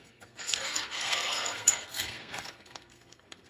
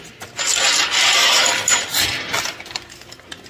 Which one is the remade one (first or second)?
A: first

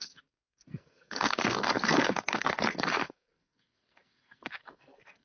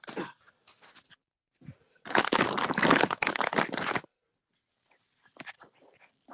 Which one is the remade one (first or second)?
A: first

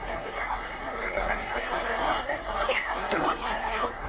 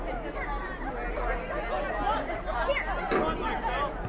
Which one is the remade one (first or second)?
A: first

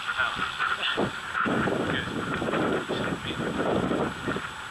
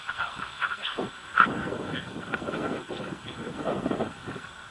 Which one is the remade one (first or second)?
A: second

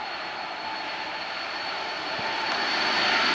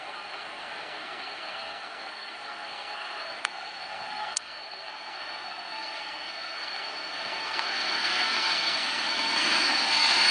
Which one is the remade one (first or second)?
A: second